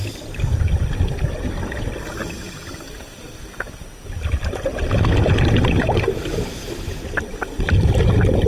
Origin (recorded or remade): recorded